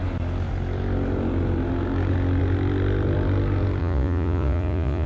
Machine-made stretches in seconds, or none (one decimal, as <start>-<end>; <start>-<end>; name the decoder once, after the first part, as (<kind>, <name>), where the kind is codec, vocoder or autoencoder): 3.8-5.1 (vocoder, Vocos)